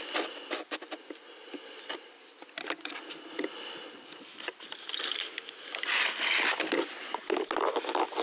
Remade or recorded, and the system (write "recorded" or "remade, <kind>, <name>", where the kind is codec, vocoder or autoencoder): recorded